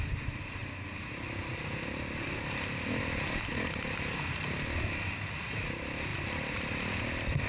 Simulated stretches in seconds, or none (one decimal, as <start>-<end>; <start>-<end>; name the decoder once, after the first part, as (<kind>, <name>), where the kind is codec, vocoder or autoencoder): none